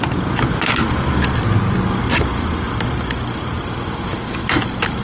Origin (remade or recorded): recorded